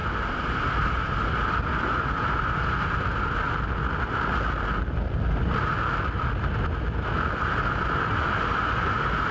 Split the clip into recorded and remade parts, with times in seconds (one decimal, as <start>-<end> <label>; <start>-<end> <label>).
0.0-9.3 recorded